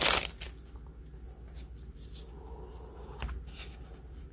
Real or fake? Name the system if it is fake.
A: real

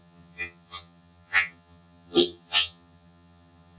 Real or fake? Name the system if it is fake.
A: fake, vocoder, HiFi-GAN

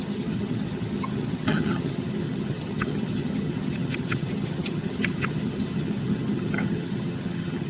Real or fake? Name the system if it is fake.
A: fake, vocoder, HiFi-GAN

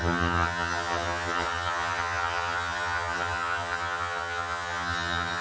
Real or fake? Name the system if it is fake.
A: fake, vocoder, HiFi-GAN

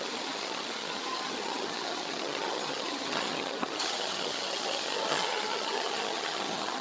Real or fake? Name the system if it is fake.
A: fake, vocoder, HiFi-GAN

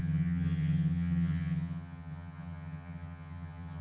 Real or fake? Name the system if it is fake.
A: fake, vocoder, HiFi-GAN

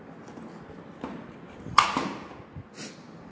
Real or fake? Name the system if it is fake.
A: real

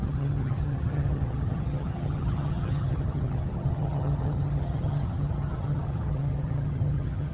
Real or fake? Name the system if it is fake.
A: fake, vocoder, HiFi-GAN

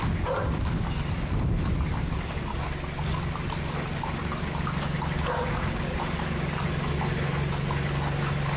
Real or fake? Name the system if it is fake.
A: real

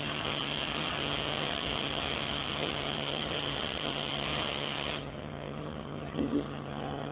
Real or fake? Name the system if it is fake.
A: fake, vocoder, HiFi-GAN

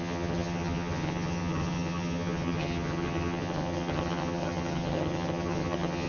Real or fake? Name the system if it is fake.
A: fake, vocoder, HiFi-GAN